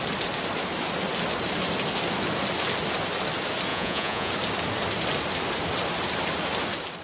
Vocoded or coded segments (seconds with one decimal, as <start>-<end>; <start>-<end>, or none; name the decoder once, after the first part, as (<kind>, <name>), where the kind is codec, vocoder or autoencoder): 3.7-4.3 (vocoder, Vocos)